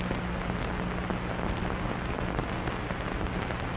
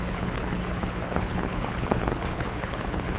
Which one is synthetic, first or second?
second